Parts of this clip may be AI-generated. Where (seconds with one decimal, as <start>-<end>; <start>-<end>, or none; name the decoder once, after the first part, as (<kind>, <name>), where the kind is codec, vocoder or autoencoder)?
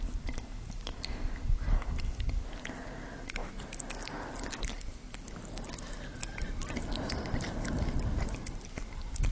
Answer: 3.4-5.7 (vocoder, BigVGAN v2)